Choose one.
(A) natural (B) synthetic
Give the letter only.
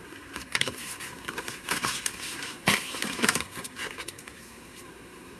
B